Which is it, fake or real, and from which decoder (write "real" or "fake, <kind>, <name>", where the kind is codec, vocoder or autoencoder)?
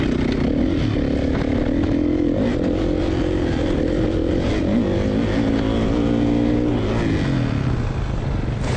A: real